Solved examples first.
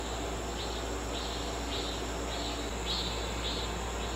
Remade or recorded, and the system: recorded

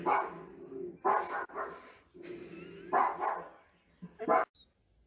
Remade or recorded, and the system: recorded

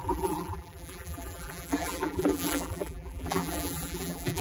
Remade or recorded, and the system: remade, vocoder, BigVGAN v2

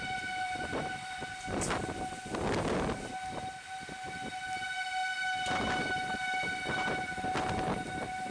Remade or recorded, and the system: recorded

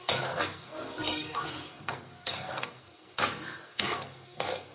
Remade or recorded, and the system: remade, codec, SNAC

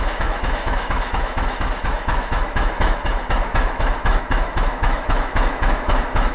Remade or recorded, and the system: remade, autoencoder, DAC-VAE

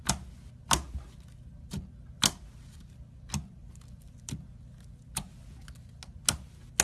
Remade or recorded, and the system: recorded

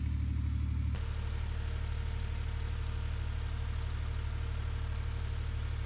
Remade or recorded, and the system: recorded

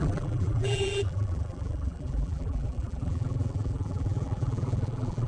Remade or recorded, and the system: remade, vocoder, BigVGAN v2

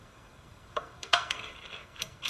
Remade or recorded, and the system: remade, codec, SNAC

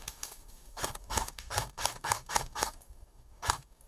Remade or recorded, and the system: remade, codec, DAC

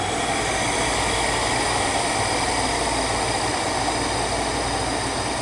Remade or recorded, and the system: recorded